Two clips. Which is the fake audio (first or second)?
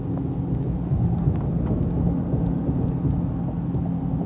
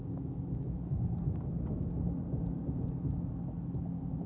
second